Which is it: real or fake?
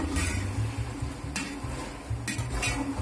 real